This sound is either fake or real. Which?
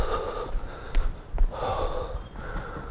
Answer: real